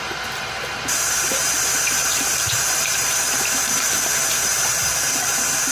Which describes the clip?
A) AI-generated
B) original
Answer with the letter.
A